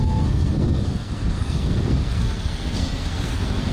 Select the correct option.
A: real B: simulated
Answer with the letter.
B